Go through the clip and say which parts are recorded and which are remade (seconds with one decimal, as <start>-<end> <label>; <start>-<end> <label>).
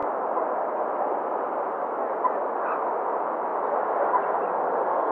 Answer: 0.0-5.1 recorded